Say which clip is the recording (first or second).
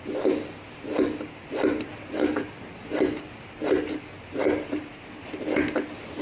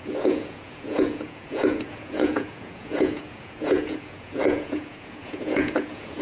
first